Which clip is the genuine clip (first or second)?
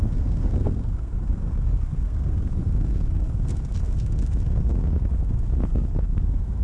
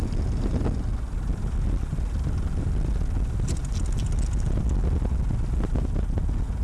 second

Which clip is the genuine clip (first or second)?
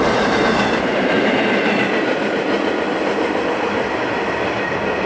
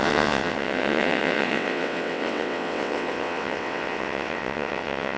first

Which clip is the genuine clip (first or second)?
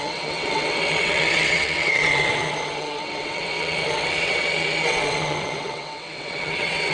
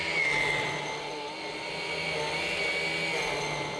second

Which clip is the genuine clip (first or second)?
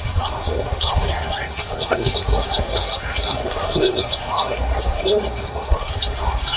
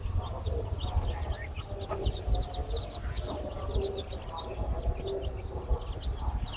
second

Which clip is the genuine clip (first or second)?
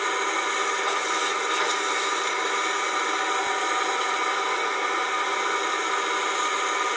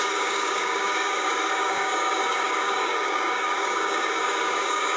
first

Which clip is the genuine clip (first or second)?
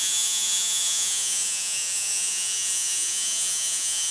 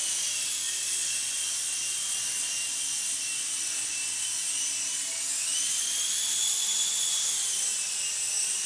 second